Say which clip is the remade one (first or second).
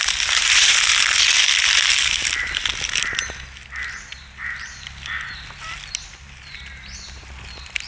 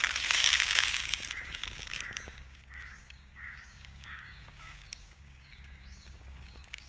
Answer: second